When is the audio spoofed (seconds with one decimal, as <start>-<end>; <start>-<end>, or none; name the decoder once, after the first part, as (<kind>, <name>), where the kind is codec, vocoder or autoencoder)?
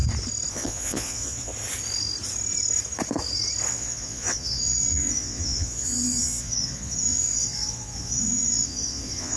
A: 0.5-1.5 (vocoder, Vocos); 3.7-9.4